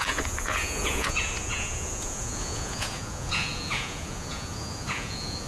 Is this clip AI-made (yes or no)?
yes